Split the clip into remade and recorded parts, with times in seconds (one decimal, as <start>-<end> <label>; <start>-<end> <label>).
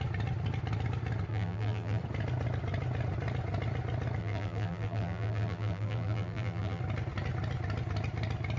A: 0.0-1.3 recorded; 1.3-2.0 remade; 2.0-4.2 recorded; 4.2-6.8 remade; 6.8-8.6 recorded